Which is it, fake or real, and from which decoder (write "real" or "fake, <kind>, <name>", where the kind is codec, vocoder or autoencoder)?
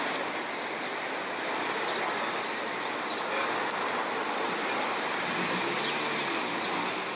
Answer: real